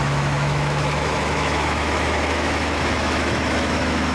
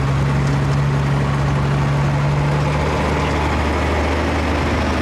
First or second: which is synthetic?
first